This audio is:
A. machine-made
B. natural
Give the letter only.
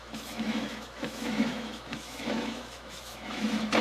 A